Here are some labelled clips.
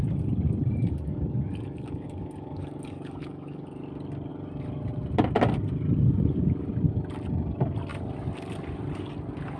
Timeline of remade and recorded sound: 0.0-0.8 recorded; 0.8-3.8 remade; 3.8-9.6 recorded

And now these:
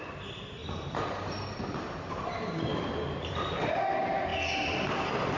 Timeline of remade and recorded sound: 0.0-4.3 remade; 4.3-5.4 recorded

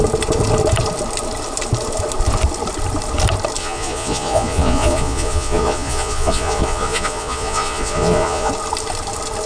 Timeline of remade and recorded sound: 0.0-3.6 recorded; 3.6-8.5 remade; 8.5-9.5 recorded